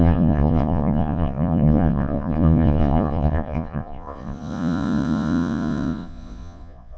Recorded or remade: remade